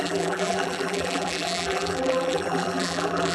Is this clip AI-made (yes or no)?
yes